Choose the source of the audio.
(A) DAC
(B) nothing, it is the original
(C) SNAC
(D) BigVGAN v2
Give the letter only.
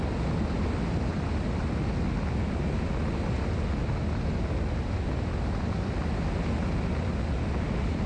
B